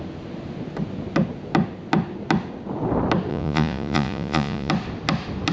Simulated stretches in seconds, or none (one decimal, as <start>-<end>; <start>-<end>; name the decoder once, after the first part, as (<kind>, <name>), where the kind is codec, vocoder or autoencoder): 3.3-4.7 (vocoder, Vocos)